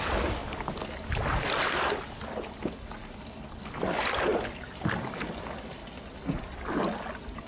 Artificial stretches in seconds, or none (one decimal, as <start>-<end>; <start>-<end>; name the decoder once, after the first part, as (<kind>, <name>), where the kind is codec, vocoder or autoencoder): none